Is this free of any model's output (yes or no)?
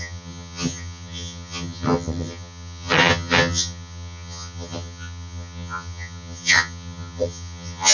no